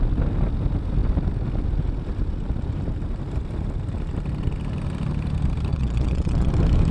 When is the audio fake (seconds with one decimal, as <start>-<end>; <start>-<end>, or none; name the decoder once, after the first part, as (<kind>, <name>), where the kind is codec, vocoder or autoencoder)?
5.7-6.5 (vocoder, Vocos)